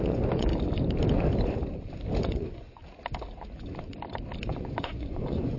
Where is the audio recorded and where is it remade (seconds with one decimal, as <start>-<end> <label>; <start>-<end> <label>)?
0.0-0.5 remade; 0.5-2.2 recorded; 2.2-2.8 remade; 2.8-4.4 recorded; 4.4-5.6 remade